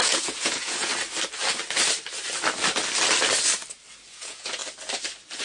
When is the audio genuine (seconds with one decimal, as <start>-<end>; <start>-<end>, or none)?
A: 0.9-4.1; 4.6-5.4